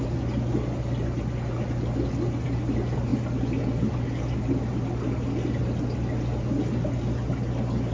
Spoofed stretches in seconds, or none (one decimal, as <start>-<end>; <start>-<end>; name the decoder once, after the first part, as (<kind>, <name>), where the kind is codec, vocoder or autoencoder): none